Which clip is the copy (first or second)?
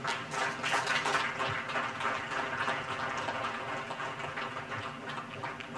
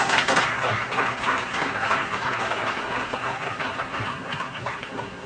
second